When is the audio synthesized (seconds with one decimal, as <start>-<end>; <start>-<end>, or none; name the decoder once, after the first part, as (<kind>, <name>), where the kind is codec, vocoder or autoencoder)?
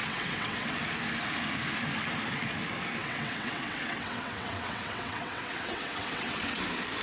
0.0-0.7 (vocoder, WaveNeXt); 3.0-6.6